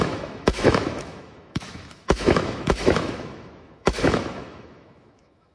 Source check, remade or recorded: remade